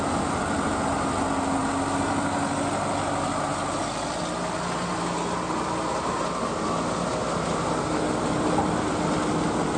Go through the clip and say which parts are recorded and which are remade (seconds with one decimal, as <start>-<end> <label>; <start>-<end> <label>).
0.0-9.8 recorded